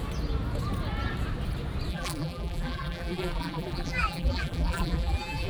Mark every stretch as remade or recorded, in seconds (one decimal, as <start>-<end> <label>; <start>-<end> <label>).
0.0-1.9 recorded; 1.9-5.5 remade